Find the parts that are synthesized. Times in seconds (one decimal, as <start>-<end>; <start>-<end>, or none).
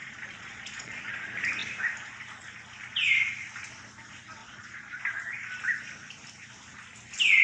0.0-1.1; 4.4-5.0